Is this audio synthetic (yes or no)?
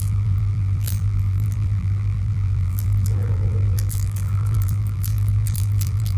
yes